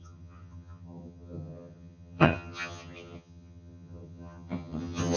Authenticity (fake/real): fake